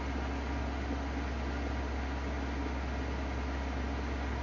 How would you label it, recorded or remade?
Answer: recorded